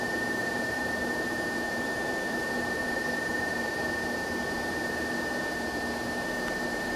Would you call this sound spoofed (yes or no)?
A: yes